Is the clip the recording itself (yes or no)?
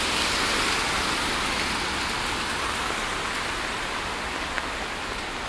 yes